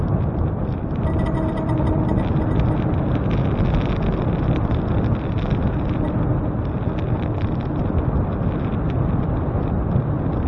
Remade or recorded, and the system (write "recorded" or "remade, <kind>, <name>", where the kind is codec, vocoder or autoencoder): recorded